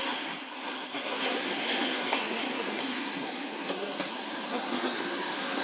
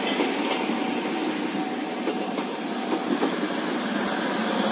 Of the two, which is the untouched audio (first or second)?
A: second